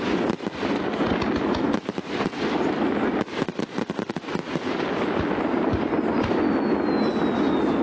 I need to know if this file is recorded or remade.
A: recorded